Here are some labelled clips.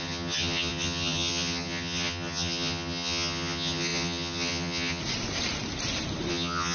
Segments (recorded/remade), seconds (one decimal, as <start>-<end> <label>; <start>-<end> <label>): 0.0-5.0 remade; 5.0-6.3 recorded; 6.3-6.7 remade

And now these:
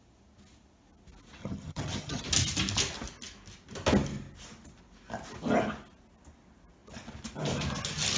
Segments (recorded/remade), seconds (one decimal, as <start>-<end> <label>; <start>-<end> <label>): 0.0-1.4 recorded; 1.4-2.2 remade; 2.2-8.2 recorded

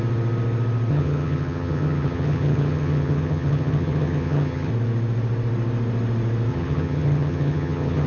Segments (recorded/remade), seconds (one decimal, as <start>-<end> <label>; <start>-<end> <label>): 0.0-0.9 recorded; 0.9-4.7 remade; 4.7-6.5 recorded; 6.5-8.1 remade

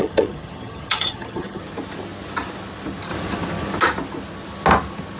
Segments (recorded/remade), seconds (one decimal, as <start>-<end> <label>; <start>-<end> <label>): 0.0-1.6 remade; 1.6-5.2 recorded

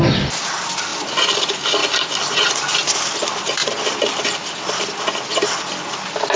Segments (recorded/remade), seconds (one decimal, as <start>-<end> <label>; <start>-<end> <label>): 0.0-6.4 recorded

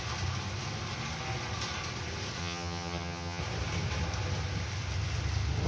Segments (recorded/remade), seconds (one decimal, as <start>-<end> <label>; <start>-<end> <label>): 0.0-2.4 recorded; 2.4-3.4 remade; 3.4-5.7 recorded

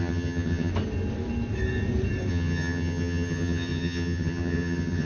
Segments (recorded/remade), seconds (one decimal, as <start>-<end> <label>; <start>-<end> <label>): 0.0-0.7 remade; 0.7-2.3 recorded; 2.3-5.1 remade

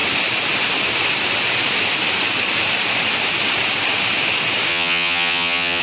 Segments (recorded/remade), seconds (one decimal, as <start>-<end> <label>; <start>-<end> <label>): 0.0-4.7 recorded; 4.7-5.8 remade